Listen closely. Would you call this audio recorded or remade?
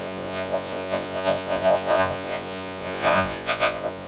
remade